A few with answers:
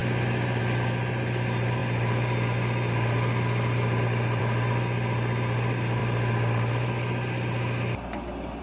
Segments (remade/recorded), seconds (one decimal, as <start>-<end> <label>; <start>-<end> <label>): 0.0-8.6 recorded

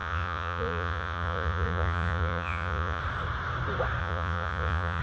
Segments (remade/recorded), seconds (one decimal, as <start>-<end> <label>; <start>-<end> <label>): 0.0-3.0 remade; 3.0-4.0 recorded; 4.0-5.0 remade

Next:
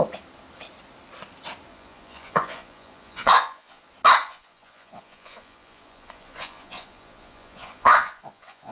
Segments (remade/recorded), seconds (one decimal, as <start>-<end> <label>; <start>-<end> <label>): 0.0-1.7 recorded; 1.7-3.8 remade; 3.8-4.2 recorded; 4.2-8.7 remade

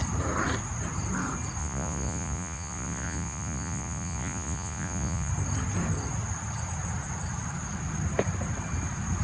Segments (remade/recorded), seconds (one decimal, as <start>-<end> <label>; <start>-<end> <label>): 0.0-1.6 recorded; 1.6-5.3 remade; 5.3-9.2 recorded

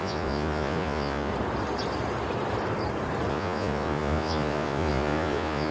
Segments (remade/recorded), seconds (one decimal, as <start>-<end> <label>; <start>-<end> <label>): 0.0-1.3 remade; 1.3-3.3 recorded; 3.3-5.7 remade